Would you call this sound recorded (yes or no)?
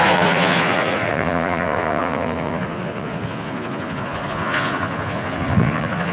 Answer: no